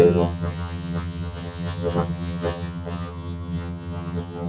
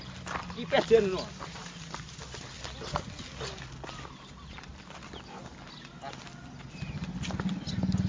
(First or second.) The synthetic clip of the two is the first